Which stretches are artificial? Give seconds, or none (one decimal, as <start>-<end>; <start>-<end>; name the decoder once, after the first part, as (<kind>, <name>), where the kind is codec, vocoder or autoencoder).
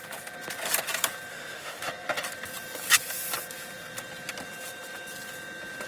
1.3-1.8 (autoencoder, DAC-VAE)